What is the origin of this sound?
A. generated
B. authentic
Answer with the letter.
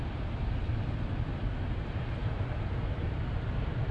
A